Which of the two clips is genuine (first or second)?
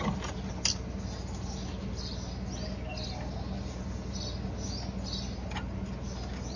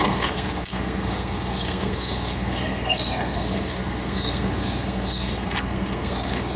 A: first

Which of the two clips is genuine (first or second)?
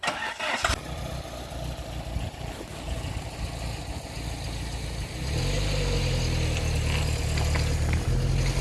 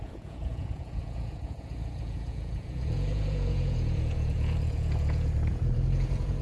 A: first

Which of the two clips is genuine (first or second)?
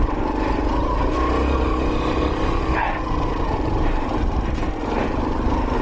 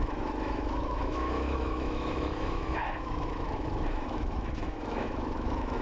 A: first